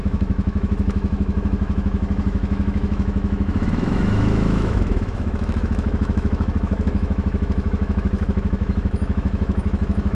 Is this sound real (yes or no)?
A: no